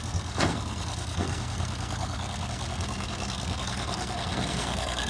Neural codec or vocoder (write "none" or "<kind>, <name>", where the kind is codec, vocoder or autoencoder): codec, SNAC